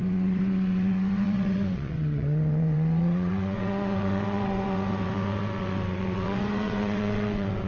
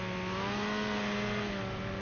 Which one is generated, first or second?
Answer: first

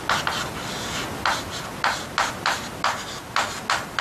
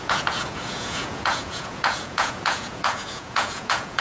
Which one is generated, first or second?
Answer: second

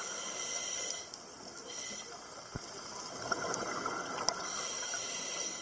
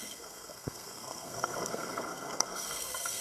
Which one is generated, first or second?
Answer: second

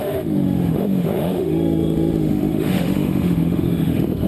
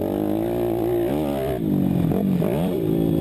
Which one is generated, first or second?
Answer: first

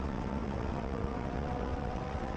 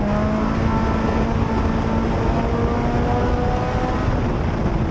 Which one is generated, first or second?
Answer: first